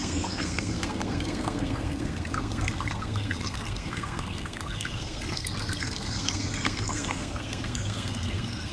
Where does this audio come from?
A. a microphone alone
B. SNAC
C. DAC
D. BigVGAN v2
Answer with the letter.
B